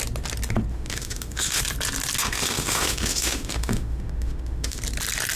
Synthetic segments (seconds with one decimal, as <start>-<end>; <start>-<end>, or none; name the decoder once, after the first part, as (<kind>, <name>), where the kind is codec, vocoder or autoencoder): 0.7-1.6 (autoencoder, DAC-VAE); 2.2-4.8